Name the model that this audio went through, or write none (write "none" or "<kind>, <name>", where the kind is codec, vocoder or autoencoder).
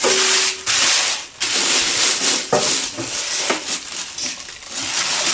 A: none